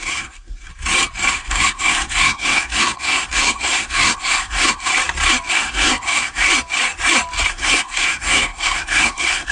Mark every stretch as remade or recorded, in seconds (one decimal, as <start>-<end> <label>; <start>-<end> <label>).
0.0-0.7 remade; 0.7-1.3 recorded; 1.3-4.9 remade; 4.9-5.5 recorded; 5.5-6.5 remade; 6.5-7.5 recorded; 7.5-9.5 remade